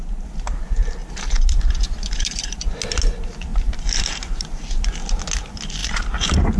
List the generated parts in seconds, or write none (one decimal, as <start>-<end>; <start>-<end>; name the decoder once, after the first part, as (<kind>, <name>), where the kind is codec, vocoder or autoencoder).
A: 1.0-2.6 (vocoder, BigVGAN v2); 3.5-5.2; 5.8-6.6